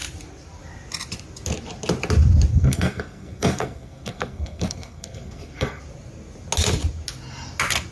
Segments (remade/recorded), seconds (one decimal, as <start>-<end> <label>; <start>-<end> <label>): 0.0-2.5 recorded; 2.5-5.8 remade; 5.8-7.9 recorded